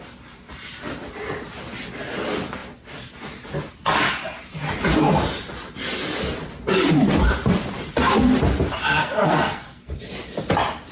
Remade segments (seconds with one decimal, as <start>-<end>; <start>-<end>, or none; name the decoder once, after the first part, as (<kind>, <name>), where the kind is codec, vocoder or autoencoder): 8.8-10.0 (codec, SNAC)